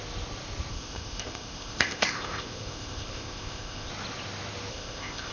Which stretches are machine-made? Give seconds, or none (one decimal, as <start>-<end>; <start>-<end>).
0.7-3.9; 4.7-5.3